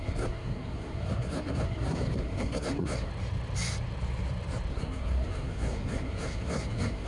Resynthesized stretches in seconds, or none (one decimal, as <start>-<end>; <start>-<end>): 0.0-3.1; 4.7-7.1